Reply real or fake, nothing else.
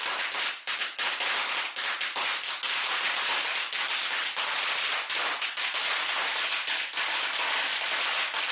real